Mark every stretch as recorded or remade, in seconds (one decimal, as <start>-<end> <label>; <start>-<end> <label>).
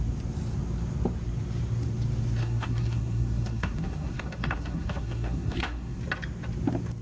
0.0-2.4 recorded; 2.4-6.0 remade; 6.0-7.0 recorded